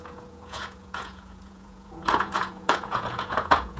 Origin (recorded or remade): remade